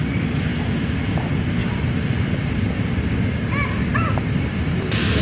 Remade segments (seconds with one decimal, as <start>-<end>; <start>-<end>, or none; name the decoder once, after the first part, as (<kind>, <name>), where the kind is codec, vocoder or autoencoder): 0.5-1.2 (vocoder, BigVGAN v2); 1.6-2.7; 3.9-5.2